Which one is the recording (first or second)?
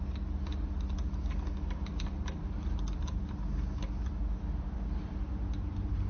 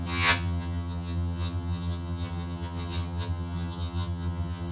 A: first